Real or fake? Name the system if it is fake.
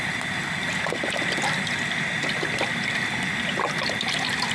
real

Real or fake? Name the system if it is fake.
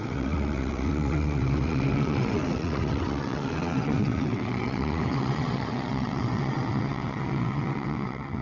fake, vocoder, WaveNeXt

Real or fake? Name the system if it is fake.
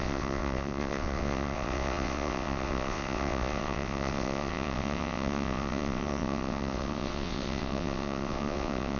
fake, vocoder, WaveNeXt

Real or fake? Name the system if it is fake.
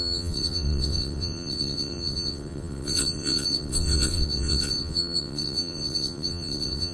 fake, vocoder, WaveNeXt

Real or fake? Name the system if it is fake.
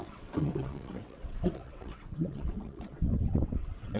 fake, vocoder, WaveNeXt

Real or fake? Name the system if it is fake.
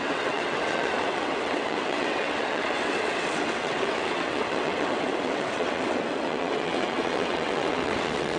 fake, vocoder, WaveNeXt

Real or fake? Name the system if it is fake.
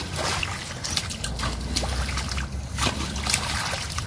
real